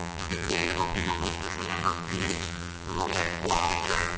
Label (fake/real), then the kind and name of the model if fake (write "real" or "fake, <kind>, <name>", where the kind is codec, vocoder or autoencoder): fake, vocoder, BigVGAN v2